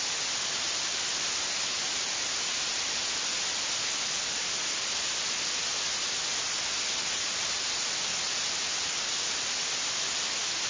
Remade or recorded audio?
recorded